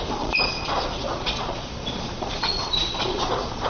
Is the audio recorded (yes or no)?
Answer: no